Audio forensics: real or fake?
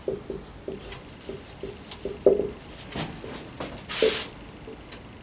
real